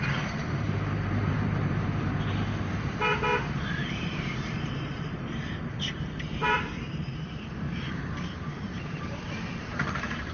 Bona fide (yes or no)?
no